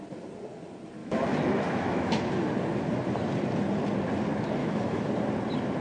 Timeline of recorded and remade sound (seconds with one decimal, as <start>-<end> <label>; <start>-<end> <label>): 0.0-1.0 recorded; 1.0-2.3 remade; 2.3-4.6 recorded; 4.6-5.1 remade; 5.1-5.8 recorded